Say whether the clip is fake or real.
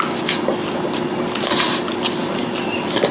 real